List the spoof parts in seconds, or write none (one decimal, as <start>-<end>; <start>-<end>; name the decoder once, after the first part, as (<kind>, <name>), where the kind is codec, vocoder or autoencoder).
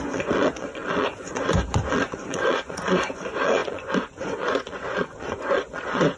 0.0-6.2 (vocoder, Vocos)